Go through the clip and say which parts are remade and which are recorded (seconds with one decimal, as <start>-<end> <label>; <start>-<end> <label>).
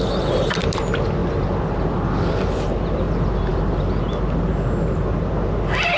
0.0-6.0 recorded